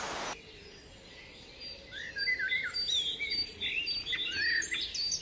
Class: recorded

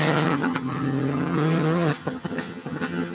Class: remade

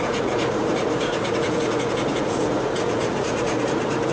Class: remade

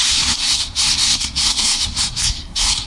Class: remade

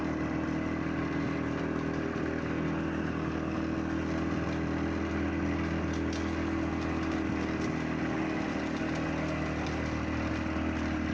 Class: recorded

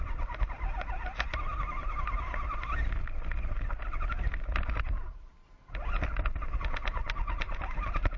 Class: recorded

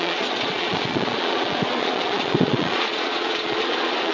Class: remade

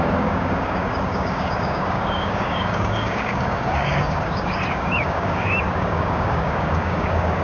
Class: remade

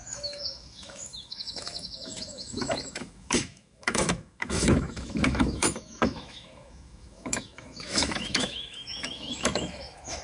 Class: remade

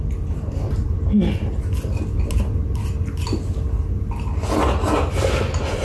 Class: recorded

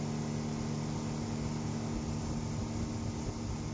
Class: recorded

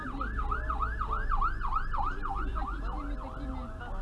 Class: recorded